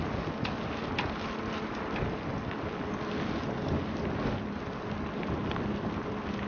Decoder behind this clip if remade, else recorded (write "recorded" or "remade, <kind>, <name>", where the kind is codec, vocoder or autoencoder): recorded